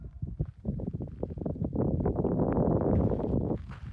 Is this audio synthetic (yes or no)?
no